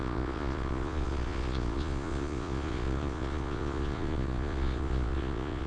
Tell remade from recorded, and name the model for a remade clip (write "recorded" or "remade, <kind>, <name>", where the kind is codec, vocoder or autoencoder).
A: remade, vocoder, Vocos